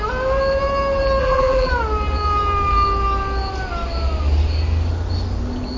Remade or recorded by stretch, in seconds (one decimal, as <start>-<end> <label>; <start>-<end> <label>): 0.0-1.2 recorded; 1.2-1.7 remade; 1.7-5.8 recorded